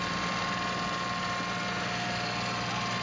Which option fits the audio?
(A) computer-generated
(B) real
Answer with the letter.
B